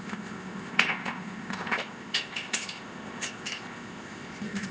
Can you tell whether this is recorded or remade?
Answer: remade